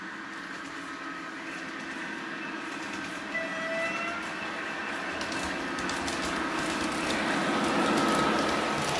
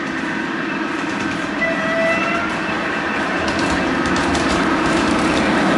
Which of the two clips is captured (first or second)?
first